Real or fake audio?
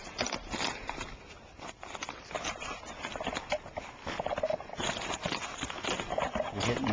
real